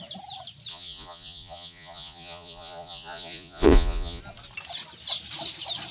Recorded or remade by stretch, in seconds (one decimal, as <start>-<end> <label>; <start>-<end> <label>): 0.0-0.7 recorded; 0.7-4.2 remade; 4.2-5.9 recorded

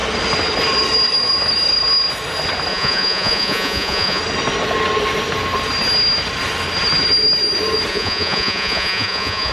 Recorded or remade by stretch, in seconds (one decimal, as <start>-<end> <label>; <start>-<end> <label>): 0.0-2.7 recorded; 2.7-4.2 remade; 4.2-7.9 recorded; 7.9-9.5 remade

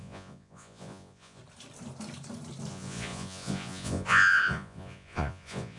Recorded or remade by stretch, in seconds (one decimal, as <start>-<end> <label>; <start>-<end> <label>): 0.0-1.4 remade; 1.4-2.7 recorded; 2.7-5.8 remade

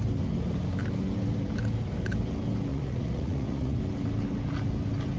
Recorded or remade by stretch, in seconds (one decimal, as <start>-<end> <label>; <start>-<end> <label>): 0.0-2.7 recorded; 2.7-3.8 remade; 3.8-5.2 recorded

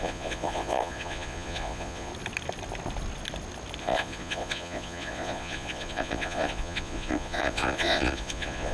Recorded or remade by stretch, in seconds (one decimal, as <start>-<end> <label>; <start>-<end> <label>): 0.0-2.1 remade; 2.1-3.8 recorded; 3.8-8.7 remade

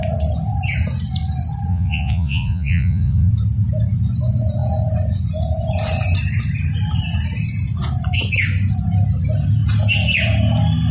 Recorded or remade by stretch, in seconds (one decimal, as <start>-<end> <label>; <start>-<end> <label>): 0.0-1.7 recorded; 1.7-3.3 remade; 3.3-10.9 recorded

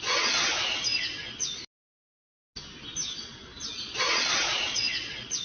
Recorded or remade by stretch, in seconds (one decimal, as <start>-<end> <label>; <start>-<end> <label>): 0.0-0.5 remade; 0.5-3.7 recorded; 3.7-5.4 remade